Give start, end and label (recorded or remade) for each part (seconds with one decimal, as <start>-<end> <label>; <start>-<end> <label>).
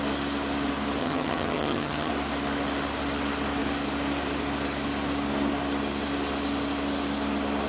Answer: 0.0-1.0 recorded; 1.0-2.1 remade; 2.1-7.7 recorded